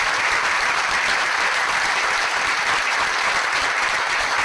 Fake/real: fake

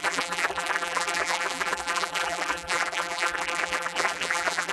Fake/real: fake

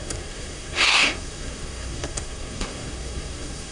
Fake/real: fake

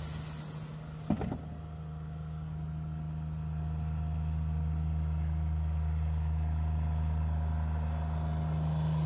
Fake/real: real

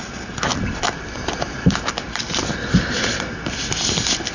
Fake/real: real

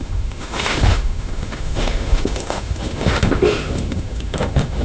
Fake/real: fake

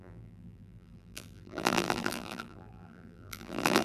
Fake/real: fake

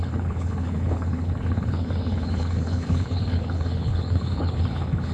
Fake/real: fake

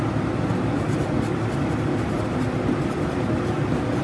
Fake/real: real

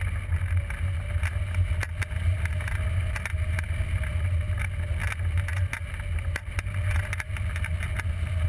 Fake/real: real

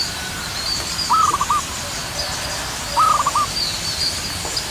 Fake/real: real